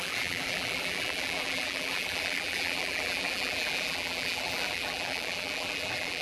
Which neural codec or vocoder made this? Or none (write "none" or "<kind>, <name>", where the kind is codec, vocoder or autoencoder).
vocoder, BigVGAN v2